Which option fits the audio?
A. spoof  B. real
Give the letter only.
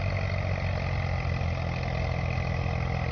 B